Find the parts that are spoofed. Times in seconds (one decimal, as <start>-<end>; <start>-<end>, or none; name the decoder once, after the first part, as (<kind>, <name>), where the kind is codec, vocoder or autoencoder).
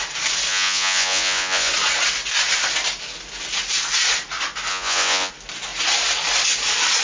0.5-1.7 (vocoder, Vocos); 4.7-5.3